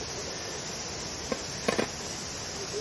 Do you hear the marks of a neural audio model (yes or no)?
no